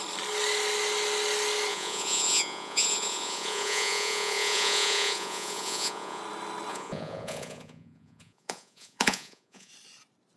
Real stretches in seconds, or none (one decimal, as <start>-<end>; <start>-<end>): 0.0-1.7; 6.2-6.7; 9.7-10.4